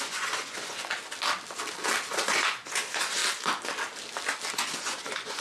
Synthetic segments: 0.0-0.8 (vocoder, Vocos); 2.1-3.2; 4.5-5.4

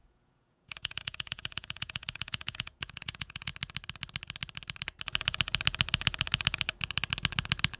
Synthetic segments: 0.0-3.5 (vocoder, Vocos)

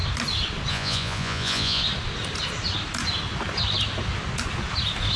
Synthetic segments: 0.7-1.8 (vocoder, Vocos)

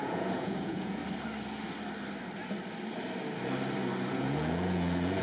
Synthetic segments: 0.0-1.0 (vocoder, Vocos); 4.1-5.2